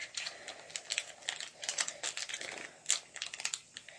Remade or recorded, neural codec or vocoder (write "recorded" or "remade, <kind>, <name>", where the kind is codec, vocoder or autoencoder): recorded